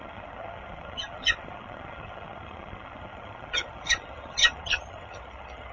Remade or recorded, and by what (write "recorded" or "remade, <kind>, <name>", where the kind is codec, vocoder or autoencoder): remade, vocoder, HiFi-GAN